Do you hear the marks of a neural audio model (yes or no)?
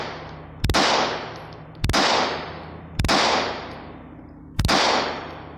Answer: no